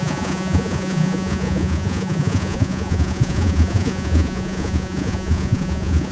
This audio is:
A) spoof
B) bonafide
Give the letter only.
A